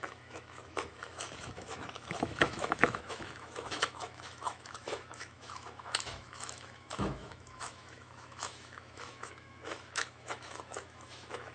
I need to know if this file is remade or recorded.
remade